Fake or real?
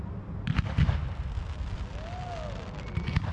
real